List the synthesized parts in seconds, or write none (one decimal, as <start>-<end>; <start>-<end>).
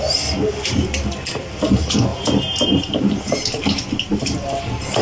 none